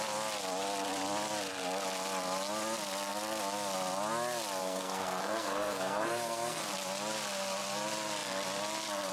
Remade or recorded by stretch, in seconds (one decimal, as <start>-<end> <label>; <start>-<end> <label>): 0.0-4.6 recorded; 4.6-6.6 remade; 6.6-9.1 recorded